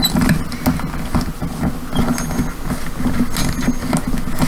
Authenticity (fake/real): real